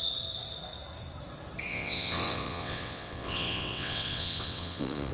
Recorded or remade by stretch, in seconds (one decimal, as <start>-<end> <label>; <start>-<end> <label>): 0.0-1.7 recorded; 1.7-5.1 remade